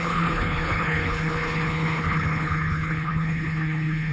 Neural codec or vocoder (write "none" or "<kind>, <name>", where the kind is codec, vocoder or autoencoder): codec, HILCodec